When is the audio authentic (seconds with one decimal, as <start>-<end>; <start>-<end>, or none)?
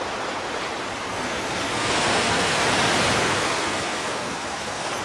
0.0-1.1; 2.6-3.2